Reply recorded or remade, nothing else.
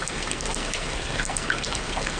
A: remade